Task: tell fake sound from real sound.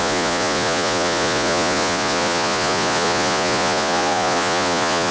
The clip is fake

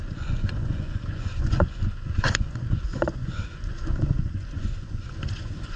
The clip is fake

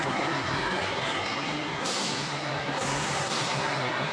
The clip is fake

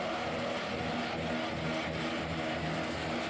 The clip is real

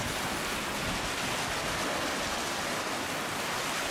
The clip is real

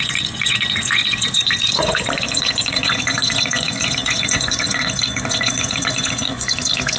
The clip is fake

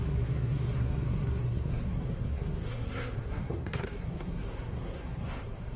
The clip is fake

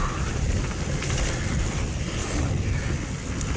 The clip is real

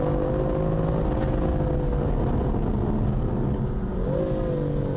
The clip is real